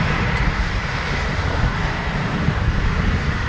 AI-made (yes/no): yes